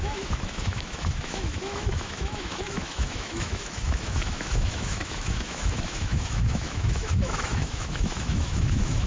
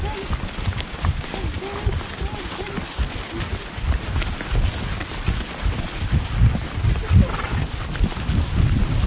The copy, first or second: first